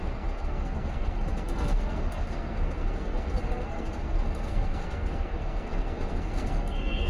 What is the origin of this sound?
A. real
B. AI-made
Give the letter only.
B